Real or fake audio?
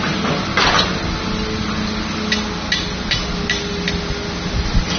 real